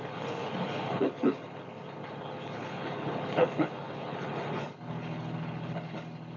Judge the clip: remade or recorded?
remade